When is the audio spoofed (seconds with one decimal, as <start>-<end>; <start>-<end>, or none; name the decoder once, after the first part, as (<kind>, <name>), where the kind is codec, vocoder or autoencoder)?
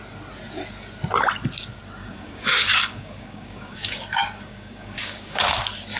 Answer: 2.0-5.6 (codec, DAC)